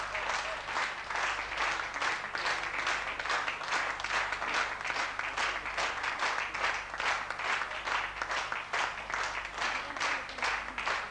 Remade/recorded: recorded